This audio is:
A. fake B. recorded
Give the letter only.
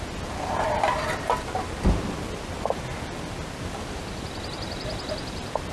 B